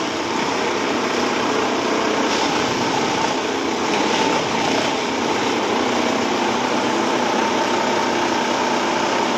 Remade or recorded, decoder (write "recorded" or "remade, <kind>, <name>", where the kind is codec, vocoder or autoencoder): remade, vocoder, BigVGAN v2